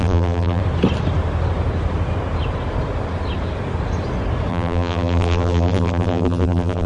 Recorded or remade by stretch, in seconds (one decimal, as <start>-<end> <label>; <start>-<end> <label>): 0.0-0.6 remade; 0.6-4.5 recorded; 4.5-6.9 remade